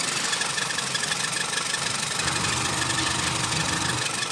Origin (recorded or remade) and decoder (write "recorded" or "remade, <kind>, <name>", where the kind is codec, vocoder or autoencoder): recorded